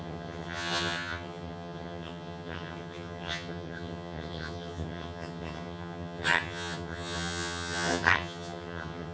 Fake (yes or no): yes